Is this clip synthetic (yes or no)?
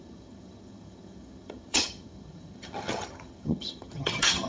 yes